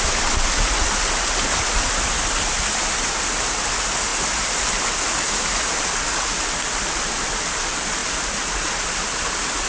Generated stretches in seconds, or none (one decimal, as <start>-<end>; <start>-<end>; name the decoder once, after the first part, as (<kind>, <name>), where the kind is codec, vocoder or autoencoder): none